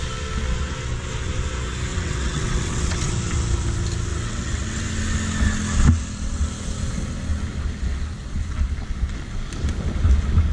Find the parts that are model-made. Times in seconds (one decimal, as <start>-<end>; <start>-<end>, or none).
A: 1.9-3.1; 4.1-4.8